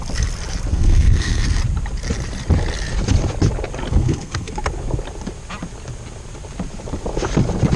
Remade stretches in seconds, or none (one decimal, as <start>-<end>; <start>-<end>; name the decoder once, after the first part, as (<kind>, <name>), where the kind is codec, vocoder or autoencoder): 0.7-1.6 (codec, SNAC); 3.9-4.5